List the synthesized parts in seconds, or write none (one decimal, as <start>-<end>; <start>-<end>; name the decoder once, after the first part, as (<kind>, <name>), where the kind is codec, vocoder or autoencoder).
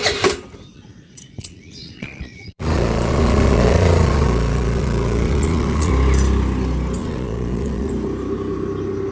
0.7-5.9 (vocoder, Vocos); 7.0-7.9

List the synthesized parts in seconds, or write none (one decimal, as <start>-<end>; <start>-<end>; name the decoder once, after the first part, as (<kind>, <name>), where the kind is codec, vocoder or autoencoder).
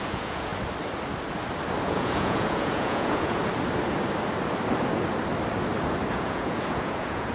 0.0-0.5 (vocoder, Vocos); 1.8-3.4; 6.1-7.3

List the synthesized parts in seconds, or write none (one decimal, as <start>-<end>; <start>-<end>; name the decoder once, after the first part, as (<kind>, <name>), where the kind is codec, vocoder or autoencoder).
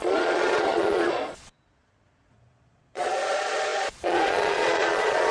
0.0-5.3 (vocoder, Vocos)